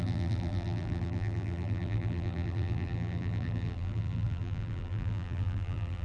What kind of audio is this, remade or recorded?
remade